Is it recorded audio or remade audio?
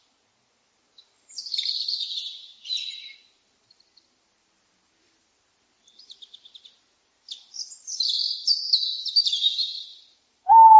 recorded